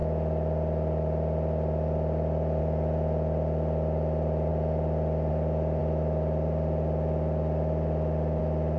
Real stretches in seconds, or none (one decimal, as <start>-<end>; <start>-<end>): 0.0-8.8